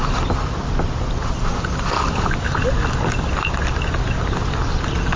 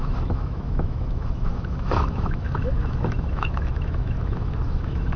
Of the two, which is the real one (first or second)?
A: first